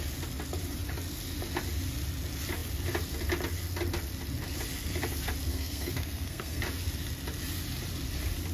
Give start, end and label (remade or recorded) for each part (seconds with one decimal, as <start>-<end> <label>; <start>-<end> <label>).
0.0-5.5 recorded; 5.5-6.6 remade; 6.6-8.5 recorded